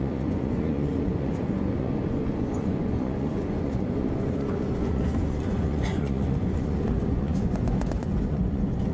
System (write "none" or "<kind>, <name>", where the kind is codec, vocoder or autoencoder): vocoder, Vocos